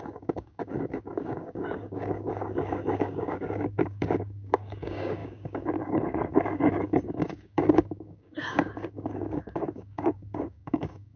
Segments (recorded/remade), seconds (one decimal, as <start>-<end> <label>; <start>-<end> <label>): 0.0-11.2 remade